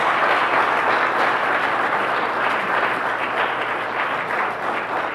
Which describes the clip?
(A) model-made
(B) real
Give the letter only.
B